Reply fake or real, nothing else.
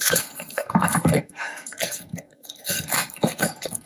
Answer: fake